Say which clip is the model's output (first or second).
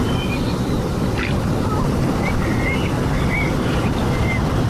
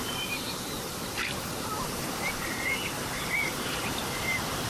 second